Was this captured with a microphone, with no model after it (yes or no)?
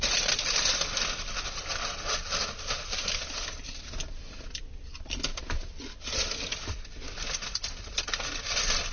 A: yes